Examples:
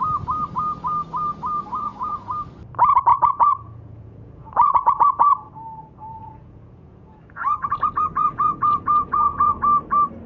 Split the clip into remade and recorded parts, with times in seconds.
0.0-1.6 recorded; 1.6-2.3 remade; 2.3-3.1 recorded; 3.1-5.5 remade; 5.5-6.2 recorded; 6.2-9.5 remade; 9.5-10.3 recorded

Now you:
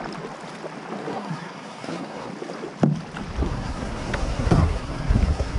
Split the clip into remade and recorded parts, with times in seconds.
0.0-1.1 recorded; 1.1-2.3 remade; 2.3-3.4 recorded; 3.4-5.6 remade

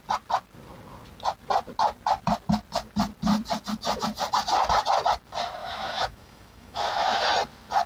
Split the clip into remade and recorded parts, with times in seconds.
0.0-5.6 recorded; 5.6-7.2 remade; 7.2-7.9 recorded

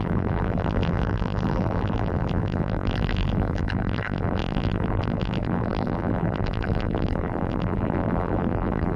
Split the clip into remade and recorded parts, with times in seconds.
0.0-9.0 remade